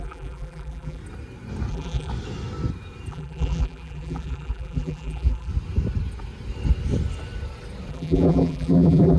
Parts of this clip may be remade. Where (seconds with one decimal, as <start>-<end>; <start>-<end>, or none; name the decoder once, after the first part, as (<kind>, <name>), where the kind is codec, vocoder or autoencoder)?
0.0-1.0 (vocoder, BigVGAN v2); 1.7-2.1; 3.1-5.5; 7.9-9.2